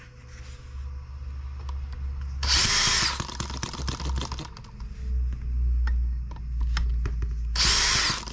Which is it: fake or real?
real